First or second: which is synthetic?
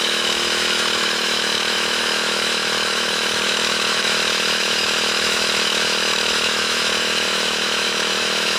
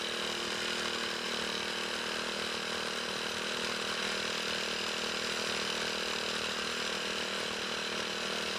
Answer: first